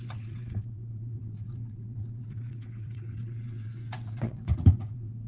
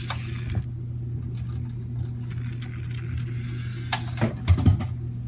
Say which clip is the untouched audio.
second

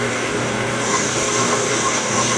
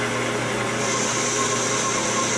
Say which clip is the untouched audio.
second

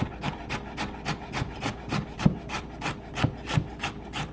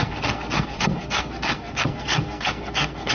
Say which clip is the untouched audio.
first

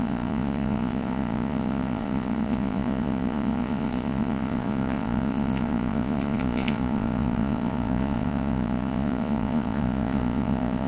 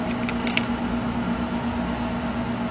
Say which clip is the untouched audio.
second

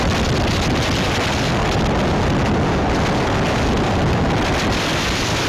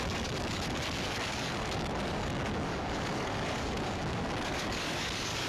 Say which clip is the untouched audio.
first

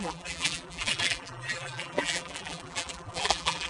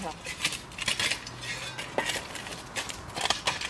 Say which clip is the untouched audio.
second